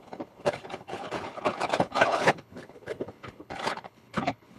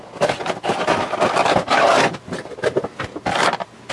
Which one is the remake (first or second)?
first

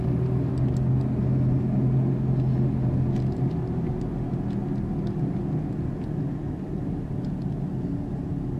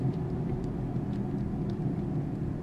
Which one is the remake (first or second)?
second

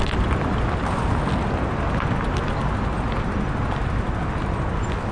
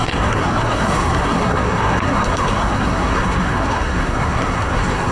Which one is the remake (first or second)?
second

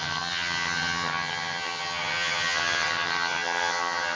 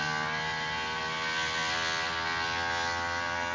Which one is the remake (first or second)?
first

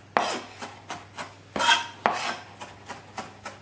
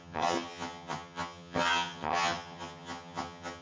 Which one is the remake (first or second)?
second